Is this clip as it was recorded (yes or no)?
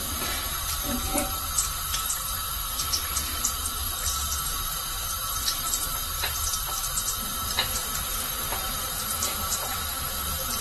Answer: no